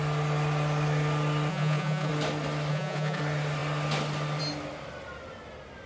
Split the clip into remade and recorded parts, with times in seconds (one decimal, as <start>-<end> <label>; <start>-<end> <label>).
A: 0.0-1.5 recorded; 1.5-2.1 remade; 2.1-2.7 recorded; 2.7-3.2 remade; 3.2-5.9 recorded